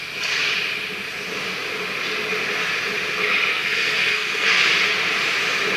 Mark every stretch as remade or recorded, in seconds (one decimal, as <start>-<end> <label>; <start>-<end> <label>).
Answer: 0.0-3.5 recorded; 3.5-4.6 remade; 4.6-5.8 recorded